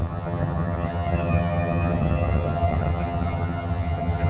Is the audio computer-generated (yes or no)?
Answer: yes